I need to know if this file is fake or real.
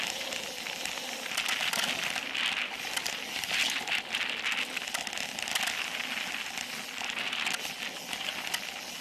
real